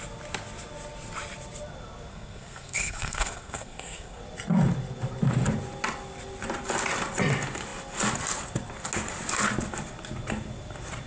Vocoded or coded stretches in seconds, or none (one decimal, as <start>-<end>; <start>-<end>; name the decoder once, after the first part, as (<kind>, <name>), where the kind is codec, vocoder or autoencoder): 2.1-4.2 (codec, SNAC)